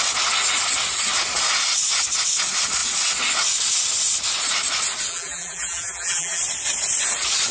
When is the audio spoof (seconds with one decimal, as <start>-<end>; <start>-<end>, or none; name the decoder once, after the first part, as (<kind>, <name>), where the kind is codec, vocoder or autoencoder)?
5.1-6.4 (vocoder, BigVGAN v2)